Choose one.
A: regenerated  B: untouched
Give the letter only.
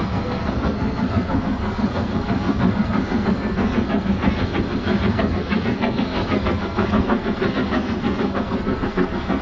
A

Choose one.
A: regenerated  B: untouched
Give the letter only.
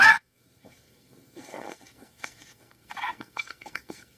A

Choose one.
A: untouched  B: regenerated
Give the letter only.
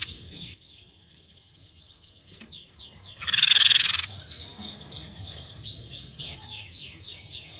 B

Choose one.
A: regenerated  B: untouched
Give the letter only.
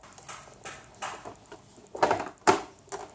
B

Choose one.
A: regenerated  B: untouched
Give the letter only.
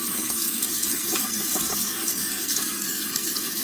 A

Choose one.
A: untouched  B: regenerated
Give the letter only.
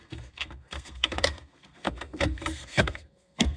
B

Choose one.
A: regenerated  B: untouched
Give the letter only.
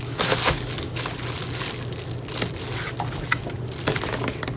B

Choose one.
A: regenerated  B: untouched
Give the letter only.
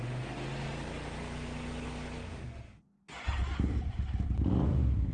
B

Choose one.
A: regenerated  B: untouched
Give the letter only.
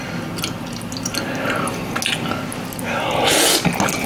B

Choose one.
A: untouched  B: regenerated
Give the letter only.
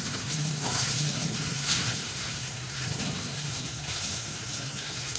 B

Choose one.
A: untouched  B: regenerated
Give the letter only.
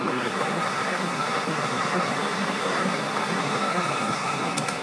B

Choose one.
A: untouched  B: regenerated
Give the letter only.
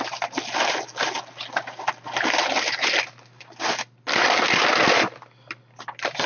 A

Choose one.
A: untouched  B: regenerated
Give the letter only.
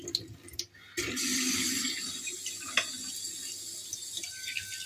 A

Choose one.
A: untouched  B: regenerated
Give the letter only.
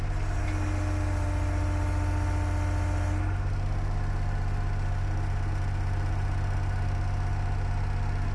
A